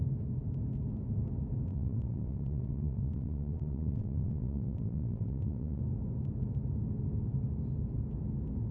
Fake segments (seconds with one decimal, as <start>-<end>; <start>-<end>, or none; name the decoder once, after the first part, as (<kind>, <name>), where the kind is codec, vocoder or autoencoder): 1.7-5.8 (vocoder, WaveNeXt)